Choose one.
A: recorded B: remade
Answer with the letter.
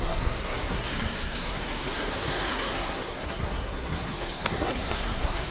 B